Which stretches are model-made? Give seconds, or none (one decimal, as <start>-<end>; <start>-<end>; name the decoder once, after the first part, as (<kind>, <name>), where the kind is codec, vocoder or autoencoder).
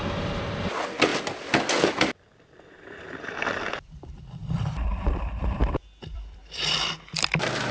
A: 0.0-7.7 (vocoder, BigVGAN v2)